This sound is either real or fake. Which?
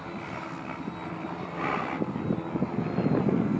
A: real